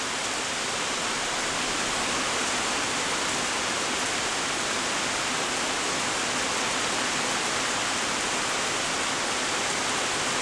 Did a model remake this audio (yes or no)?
no